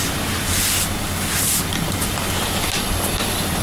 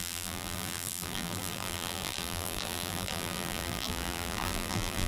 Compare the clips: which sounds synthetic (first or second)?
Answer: second